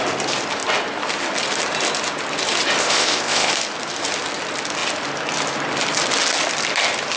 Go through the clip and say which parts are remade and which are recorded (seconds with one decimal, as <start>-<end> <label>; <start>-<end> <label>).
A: 0.0-2.8 recorded; 2.8-3.5 remade; 3.5-7.2 recorded